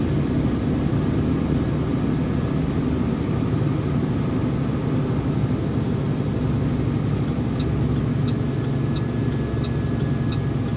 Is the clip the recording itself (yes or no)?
yes